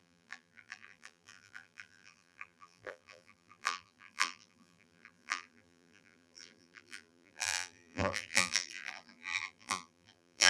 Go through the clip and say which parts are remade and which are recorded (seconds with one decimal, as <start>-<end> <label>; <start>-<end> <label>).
0.0-10.5 remade